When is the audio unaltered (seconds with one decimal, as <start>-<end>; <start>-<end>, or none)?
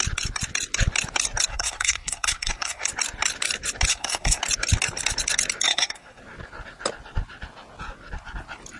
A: 0.0-1.5; 2.9-3.9; 4.4-5.7; 6.2-8.8